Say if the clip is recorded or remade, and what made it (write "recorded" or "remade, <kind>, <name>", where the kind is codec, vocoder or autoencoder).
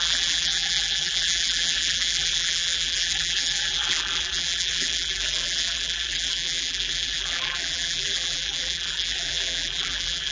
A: remade, vocoder, BigVGAN v2